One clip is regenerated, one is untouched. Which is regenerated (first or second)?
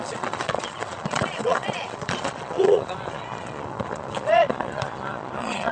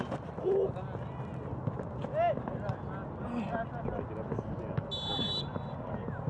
first